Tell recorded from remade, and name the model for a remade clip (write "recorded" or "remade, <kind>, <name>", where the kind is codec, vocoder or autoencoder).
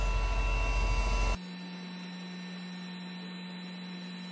recorded